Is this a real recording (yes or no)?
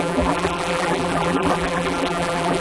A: no